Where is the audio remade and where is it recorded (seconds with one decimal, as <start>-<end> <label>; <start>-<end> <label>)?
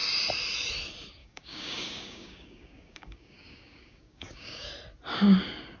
0.0-1.2 recorded; 1.2-4.7 remade; 4.7-5.8 recorded